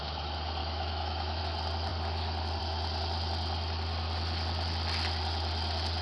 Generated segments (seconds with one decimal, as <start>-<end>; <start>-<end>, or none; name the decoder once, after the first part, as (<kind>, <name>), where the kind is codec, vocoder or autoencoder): 0.6-1.4 (autoencoder, DAC-VAE)